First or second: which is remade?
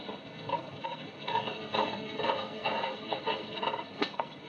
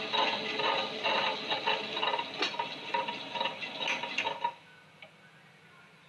first